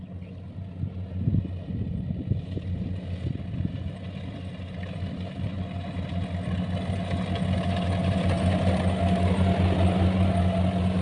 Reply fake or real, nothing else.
real